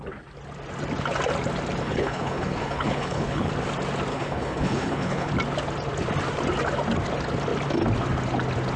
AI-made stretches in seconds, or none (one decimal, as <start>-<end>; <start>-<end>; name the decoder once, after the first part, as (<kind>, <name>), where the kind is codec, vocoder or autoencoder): 1.8-3.5 (codec, HILCodec); 4.1-5.3